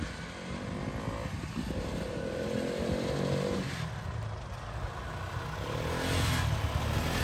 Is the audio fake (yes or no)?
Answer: no